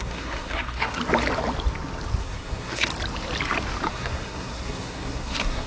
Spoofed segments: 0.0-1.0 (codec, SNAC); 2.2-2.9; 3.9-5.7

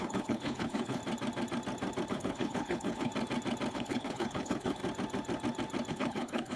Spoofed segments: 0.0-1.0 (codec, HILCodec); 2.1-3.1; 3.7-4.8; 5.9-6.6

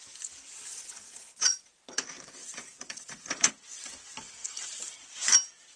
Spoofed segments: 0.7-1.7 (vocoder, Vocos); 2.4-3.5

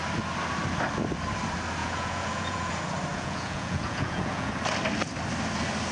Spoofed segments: 1.8-2.7 (vocoder, Vocos); 3.1-4.5

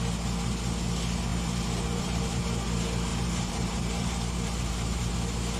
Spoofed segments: 1.3-2.4 (vocoder, BigVGAN v2); 3.1-5.1